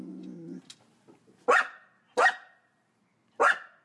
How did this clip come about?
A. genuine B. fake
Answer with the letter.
A